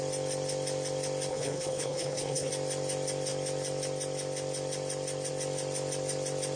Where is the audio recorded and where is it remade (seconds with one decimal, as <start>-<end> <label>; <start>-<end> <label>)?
0.0-1.3 recorded; 1.3-2.5 remade; 2.5-6.6 recorded